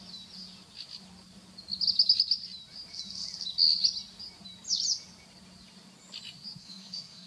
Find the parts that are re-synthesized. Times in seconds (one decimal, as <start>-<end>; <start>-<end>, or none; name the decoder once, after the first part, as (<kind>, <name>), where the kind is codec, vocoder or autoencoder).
6.6-7.3 (codec, SNAC)